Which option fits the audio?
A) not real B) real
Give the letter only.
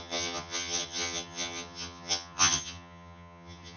A